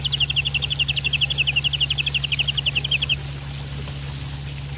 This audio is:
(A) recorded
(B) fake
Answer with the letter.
A